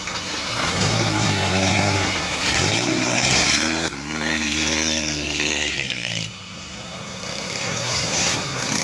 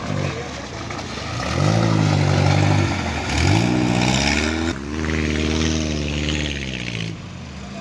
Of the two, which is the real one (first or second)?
second